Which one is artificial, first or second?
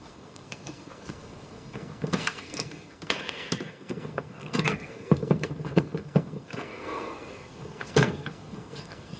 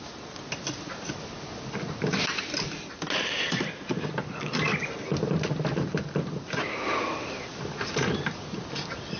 first